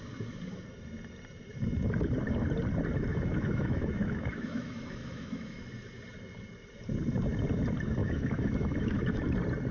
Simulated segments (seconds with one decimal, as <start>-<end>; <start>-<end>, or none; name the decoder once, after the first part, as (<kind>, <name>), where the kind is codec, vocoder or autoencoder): 3.1-5.6 (autoencoder, DAC-VAE); 8.0-9.2